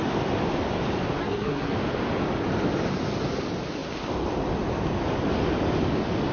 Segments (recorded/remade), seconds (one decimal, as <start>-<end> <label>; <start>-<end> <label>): 0.0-1.2 recorded; 1.2-1.7 remade; 1.7-6.3 recorded